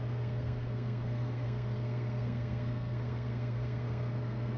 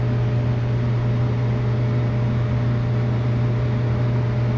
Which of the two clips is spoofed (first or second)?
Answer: first